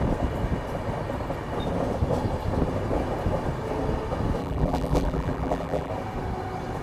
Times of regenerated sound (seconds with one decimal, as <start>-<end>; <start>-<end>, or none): 4.4-5.9